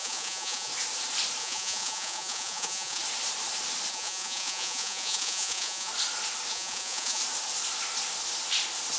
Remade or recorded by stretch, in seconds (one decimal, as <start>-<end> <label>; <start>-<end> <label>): 0.0-0.7 remade; 0.7-1.4 recorded; 1.4-3.0 remade; 3.0-3.9 recorded; 3.9-5.9 remade; 5.9-6.5 recorded; 6.5-7.2 remade; 7.2-9.0 recorded